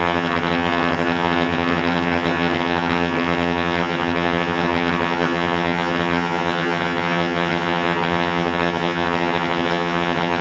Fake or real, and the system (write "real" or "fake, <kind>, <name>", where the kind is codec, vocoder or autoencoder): fake, vocoder, HiFi-GAN